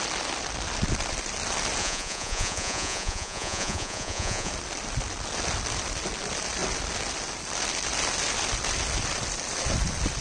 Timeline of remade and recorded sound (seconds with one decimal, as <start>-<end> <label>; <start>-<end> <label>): 0.0-1.8 recorded; 1.8-4.5 remade; 4.5-10.2 recorded